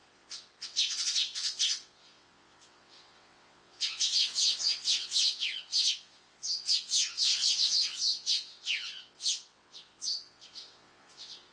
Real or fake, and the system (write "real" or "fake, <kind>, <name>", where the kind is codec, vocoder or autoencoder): fake, vocoder, WaveNeXt